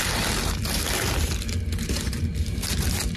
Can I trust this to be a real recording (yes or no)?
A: yes